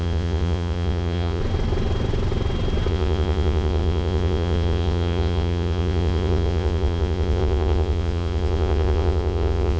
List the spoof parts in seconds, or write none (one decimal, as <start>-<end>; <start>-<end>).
0.0-1.4; 2.9-9.8